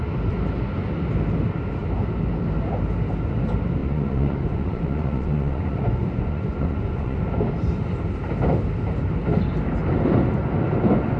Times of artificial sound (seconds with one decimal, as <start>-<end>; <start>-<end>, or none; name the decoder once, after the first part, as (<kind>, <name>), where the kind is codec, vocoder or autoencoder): 3.8-7.2 (vocoder, Vocos)